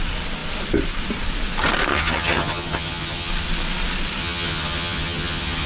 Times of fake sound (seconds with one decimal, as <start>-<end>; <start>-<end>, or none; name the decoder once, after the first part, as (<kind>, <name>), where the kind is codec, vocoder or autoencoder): 1.9-3.3 (vocoder, HiFi-GAN); 4.2-5.7